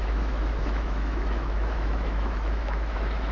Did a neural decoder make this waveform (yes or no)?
yes